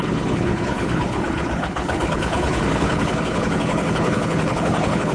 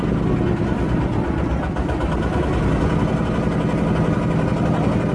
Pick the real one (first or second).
second